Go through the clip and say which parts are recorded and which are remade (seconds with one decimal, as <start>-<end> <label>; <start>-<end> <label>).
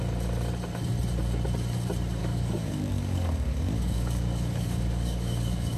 0.0-2.2 recorded; 2.2-5.8 remade